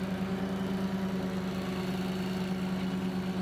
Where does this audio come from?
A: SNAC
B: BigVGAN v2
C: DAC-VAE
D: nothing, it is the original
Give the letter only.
D